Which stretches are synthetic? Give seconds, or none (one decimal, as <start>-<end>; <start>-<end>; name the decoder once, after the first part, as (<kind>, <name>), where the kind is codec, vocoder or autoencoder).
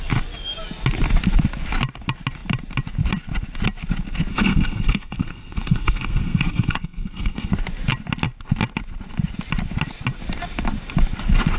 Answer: 4.3-7.5 (codec, SNAC)